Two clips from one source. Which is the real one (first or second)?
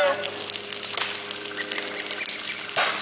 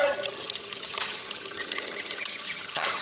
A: first